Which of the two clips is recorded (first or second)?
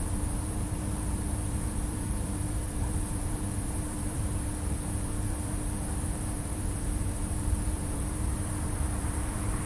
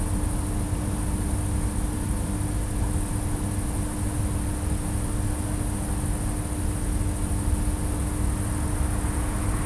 second